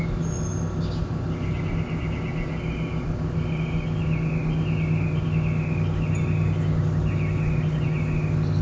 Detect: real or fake real